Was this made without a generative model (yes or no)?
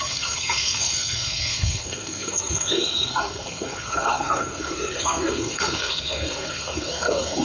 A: no